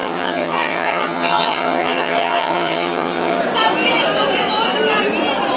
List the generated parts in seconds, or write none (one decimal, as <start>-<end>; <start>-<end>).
0.0-3.4